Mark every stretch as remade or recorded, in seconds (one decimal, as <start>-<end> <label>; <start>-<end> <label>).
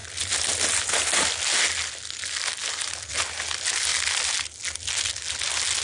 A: 0.0-5.8 recorded